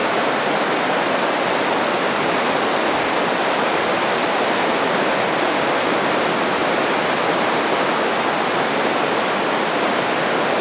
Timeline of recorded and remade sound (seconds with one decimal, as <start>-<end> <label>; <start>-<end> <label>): 0.0-10.6 recorded